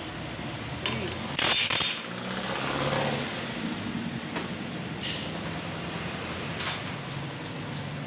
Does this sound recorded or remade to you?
recorded